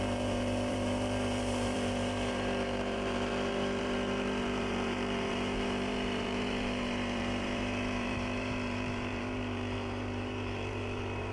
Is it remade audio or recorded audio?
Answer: remade